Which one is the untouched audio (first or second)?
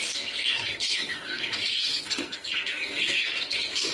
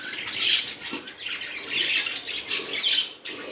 second